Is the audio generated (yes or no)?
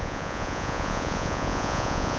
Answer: yes